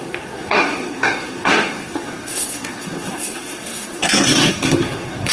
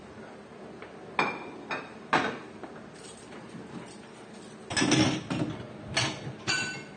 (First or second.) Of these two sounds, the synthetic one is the first